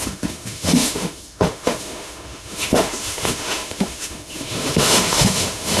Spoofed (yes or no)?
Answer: yes